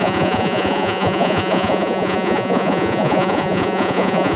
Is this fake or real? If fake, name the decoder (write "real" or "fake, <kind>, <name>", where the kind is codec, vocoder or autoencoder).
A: fake, vocoder, Vocos